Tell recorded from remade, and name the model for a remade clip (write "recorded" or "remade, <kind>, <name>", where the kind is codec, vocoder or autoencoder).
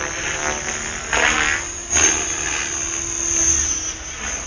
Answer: recorded